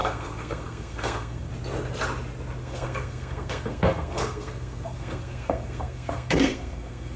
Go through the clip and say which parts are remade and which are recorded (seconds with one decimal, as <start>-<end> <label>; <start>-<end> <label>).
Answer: 0.0-1.5 remade; 1.5-2.6 recorded; 2.6-7.2 remade